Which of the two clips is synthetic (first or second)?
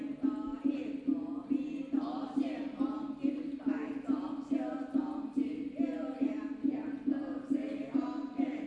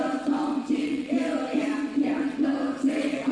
second